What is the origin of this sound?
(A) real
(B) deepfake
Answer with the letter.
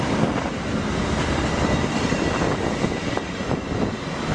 A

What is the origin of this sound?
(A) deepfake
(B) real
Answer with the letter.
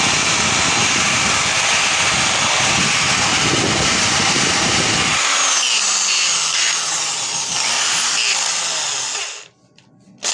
B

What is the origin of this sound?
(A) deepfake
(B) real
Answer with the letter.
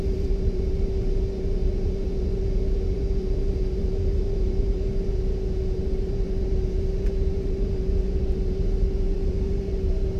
A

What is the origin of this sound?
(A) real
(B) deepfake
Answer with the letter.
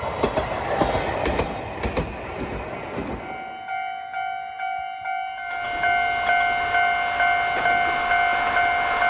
A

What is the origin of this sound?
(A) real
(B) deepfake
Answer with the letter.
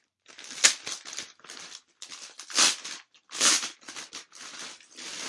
A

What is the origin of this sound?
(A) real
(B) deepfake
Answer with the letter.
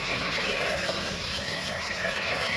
B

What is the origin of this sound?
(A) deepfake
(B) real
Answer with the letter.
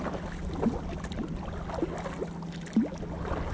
B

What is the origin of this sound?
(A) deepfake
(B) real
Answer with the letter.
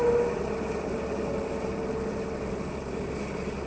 B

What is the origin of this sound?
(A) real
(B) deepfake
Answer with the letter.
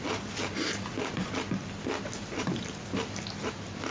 A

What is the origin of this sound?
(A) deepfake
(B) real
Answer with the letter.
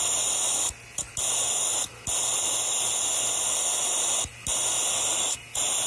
B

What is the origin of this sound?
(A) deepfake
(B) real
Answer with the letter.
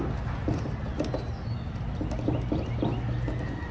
B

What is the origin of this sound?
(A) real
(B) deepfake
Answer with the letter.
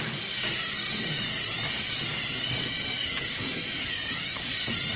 A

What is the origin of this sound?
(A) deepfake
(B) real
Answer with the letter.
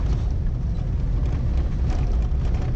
B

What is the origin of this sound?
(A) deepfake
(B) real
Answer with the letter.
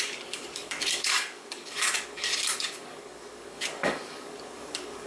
A